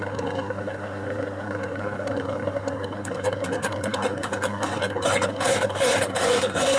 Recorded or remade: remade